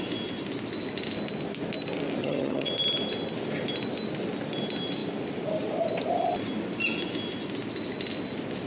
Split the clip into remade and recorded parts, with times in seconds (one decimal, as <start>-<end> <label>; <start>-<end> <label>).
0.0-2.2 recorded; 2.2-2.7 remade; 2.7-8.7 recorded